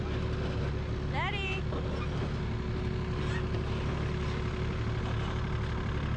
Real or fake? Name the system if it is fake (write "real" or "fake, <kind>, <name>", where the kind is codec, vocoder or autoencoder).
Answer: real